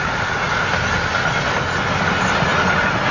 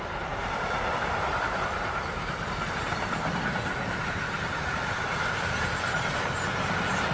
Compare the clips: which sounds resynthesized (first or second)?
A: second